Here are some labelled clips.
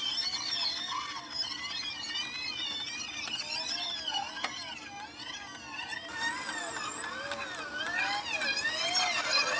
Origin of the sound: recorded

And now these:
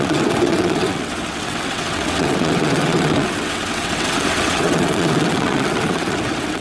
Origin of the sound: remade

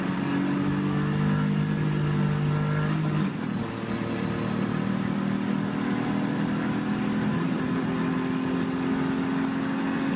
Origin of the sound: recorded